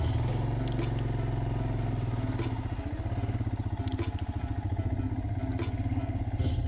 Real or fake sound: real